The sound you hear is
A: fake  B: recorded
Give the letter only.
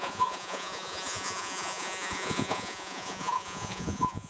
A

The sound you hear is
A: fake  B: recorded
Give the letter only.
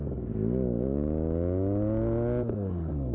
B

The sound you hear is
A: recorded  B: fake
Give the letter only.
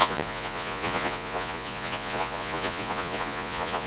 B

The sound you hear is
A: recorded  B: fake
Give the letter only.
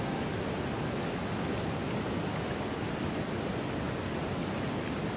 A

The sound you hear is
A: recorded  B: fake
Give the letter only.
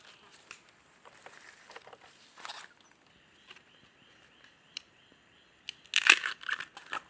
A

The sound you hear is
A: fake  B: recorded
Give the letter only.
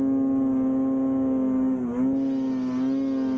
B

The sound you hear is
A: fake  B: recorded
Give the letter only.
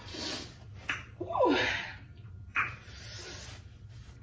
B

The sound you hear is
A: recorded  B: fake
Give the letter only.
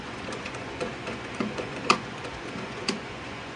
B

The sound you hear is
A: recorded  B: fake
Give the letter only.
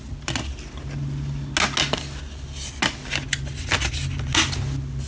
A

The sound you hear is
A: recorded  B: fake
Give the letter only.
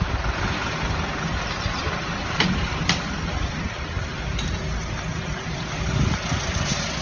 A